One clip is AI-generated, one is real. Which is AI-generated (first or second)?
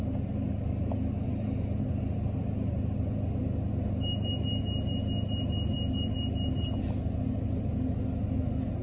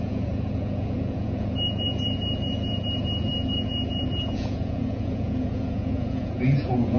second